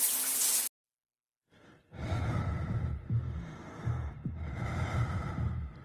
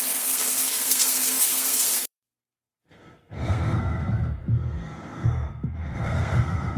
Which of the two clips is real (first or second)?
first